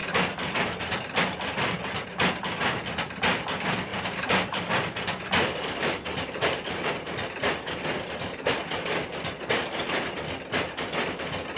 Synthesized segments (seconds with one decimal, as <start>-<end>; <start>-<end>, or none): 3.9-6.9